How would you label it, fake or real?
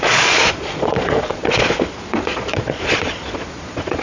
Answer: fake